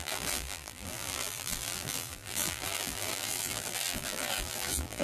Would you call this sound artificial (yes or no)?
yes